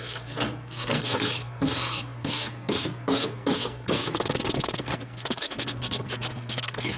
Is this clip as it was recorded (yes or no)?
no